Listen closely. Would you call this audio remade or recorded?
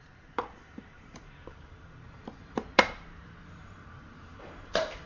remade